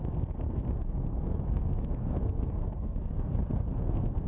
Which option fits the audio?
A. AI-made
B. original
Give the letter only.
A